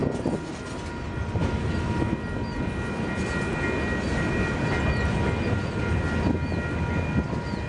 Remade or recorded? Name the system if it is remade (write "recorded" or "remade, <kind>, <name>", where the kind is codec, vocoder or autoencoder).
recorded